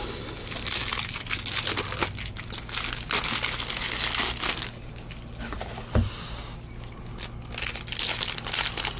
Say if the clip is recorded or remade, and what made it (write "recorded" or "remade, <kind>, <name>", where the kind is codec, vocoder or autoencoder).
recorded